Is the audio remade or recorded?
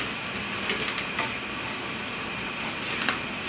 recorded